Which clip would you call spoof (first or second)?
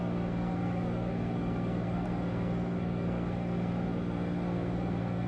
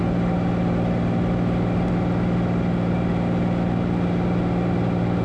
first